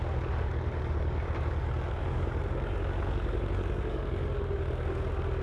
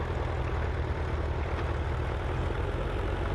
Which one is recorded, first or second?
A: second